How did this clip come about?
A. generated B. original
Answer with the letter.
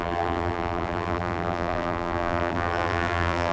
A